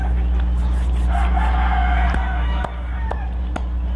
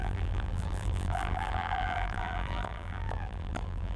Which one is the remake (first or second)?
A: second